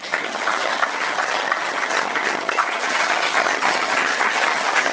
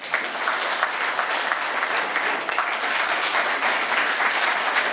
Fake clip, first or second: first